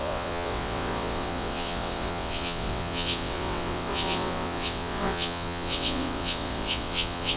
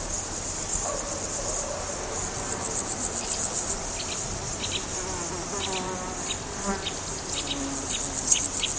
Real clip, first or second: second